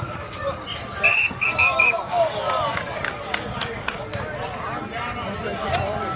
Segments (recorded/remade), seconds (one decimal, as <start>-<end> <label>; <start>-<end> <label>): 0.0-1.1 recorded; 1.1-4.0 remade; 4.0-6.2 recorded